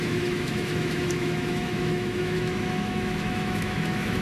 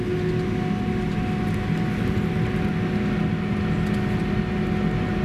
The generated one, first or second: first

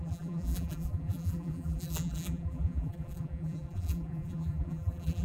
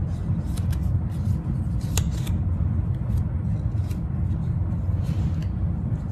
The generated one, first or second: first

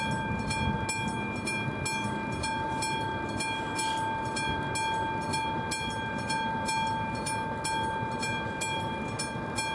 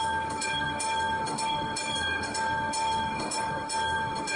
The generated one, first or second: second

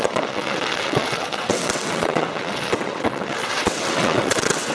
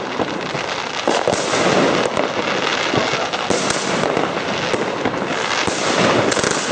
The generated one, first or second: first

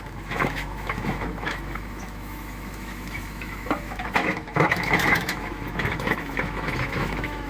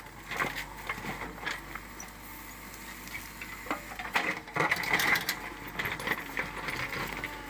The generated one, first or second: first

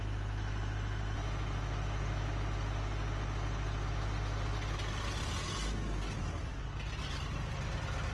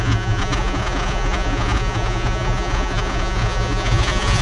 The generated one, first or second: second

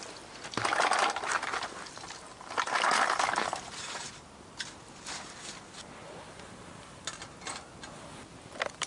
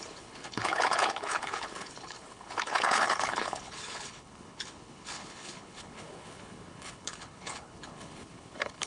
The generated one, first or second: second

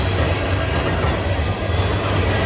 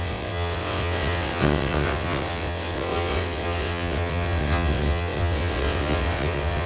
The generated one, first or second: second